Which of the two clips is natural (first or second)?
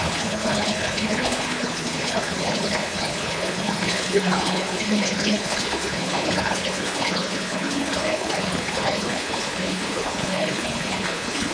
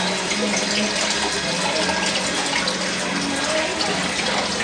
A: second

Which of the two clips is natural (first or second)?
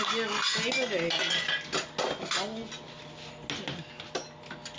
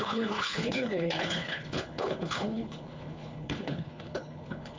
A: first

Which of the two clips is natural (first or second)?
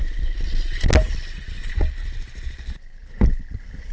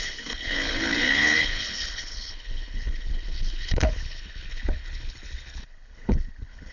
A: first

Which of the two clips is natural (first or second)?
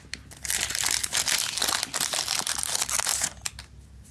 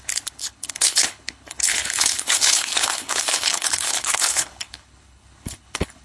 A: first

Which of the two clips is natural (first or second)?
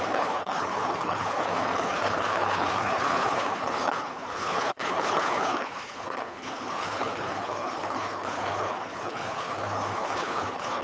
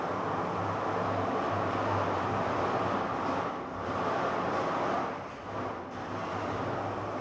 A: second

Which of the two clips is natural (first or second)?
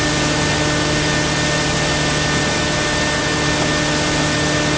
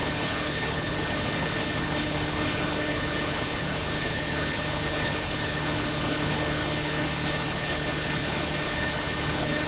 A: first